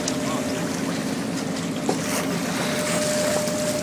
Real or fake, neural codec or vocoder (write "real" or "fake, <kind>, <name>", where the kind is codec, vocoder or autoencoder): real